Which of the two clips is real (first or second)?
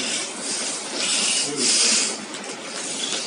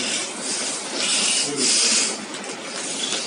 second